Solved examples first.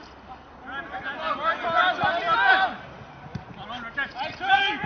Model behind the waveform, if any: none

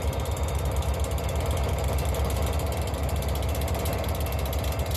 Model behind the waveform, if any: none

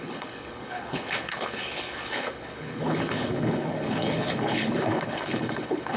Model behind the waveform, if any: codec, HILCodec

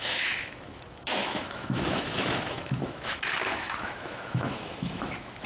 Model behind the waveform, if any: autoencoder, DAC-VAE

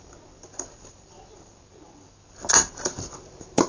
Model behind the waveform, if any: vocoder, BigVGAN v2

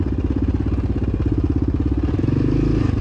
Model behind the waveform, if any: none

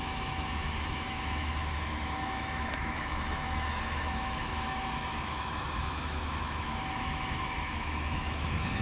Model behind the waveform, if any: autoencoder, DAC-VAE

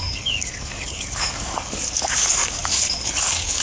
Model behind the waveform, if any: codec, DAC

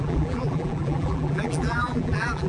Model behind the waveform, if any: vocoder, BigVGAN v2